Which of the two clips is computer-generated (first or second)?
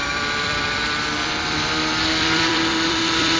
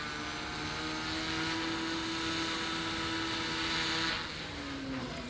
first